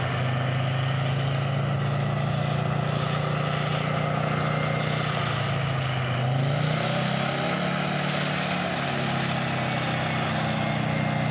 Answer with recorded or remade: recorded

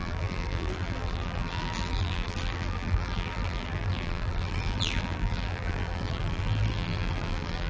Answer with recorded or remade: remade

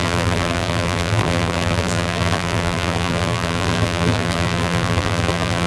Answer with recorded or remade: remade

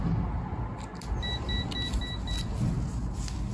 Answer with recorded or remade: recorded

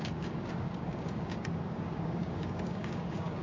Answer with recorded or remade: remade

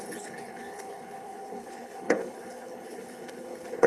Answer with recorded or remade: remade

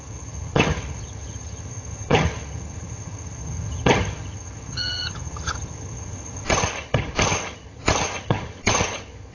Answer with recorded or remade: remade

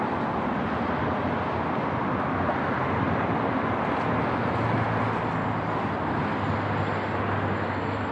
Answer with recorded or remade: recorded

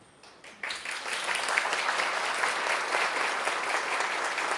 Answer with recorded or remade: recorded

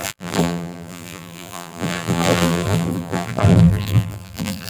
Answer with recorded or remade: remade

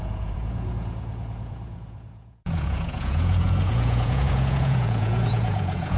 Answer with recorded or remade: remade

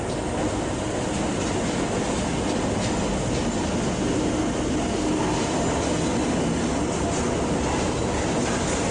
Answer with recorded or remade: recorded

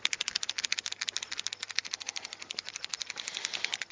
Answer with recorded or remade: recorded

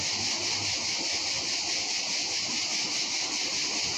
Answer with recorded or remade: recorded